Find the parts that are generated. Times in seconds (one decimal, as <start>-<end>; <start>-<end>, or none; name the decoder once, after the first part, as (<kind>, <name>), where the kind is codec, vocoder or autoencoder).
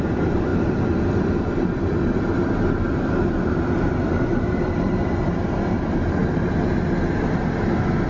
0.0-6.2 (vocoder, BigVGAN v2)